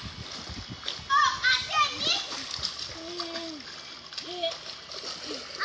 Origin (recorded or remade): recorded